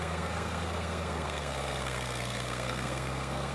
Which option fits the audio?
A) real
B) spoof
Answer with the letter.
B